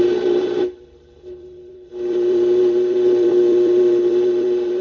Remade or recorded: remade